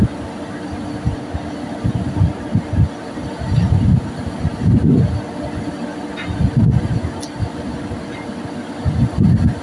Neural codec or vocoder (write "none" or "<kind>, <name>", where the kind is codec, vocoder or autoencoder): none